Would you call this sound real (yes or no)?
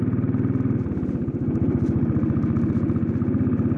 yes